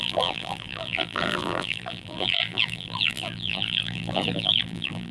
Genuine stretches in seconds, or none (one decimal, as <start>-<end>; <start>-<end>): none